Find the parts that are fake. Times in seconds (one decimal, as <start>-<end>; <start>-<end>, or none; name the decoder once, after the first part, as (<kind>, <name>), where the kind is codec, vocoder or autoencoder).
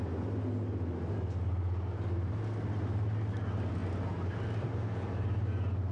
none